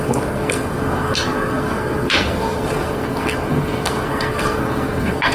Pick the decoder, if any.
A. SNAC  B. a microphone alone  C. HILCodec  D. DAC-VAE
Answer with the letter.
A